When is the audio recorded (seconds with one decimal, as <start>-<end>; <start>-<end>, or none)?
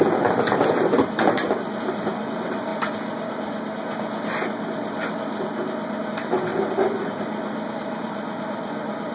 2.7-6.1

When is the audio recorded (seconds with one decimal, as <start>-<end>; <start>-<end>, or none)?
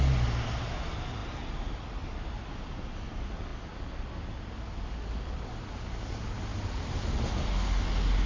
0.0-8.3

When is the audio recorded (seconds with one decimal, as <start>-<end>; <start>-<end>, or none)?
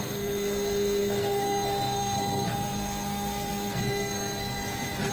none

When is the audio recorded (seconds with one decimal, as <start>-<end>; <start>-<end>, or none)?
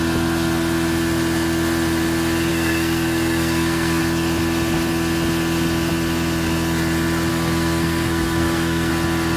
0.0-2.5; 4.0-7.3; 8.9-9.4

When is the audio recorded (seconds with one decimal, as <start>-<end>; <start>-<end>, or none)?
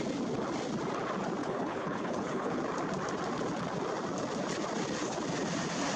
0.0-1.4; 2.6-6.0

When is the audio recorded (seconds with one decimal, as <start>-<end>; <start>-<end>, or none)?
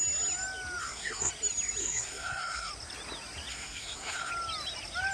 0.0-0.8; 1.3-1.8; 2.7-3.5; 4.3-5.1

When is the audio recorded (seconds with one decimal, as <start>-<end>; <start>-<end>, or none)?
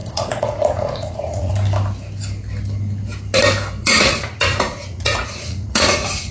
1.5-3.8